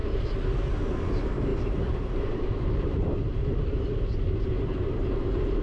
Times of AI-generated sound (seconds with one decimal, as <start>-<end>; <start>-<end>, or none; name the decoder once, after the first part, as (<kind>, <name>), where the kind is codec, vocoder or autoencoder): 1.1-5.6 (vocoder, BigVGAN v2)